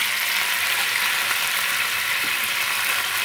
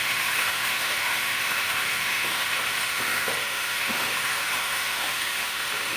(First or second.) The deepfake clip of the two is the second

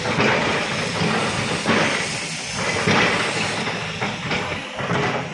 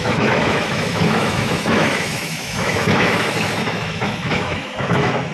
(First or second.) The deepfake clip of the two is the second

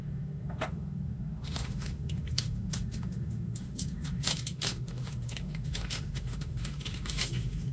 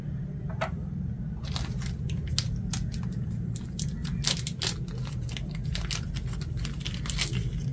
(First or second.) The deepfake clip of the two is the first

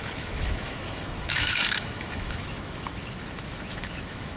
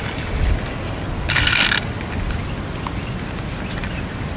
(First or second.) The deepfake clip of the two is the first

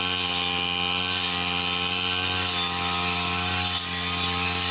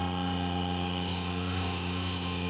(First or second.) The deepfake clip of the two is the second